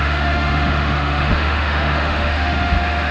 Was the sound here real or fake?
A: fake